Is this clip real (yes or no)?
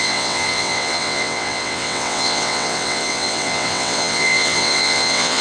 no